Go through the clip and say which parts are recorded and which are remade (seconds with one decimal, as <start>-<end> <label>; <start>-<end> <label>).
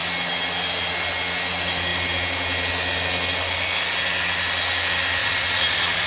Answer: 0.0-5.2 recorded; 5.2-6.1 remade